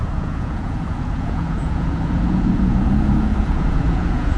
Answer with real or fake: fake